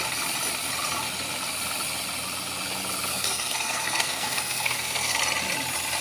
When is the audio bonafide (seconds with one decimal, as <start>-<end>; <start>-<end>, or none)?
0.0-3.1; 5.2-6.0